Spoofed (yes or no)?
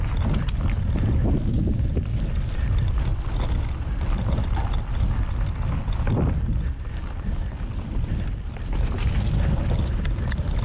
no